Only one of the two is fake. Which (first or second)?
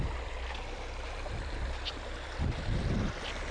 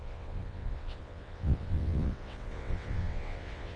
second